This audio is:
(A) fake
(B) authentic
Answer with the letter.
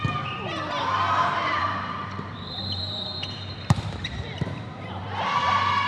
A